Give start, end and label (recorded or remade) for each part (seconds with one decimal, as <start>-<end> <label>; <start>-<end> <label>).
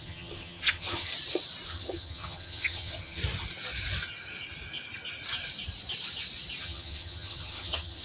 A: 0.0-1.1 remade; 1.1-1.7 recorded; 1.7-3.2 remade; 3.2-6.6 recorded; 6.6-8.0 remade